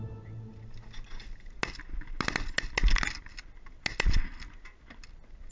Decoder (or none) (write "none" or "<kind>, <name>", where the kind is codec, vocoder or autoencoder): none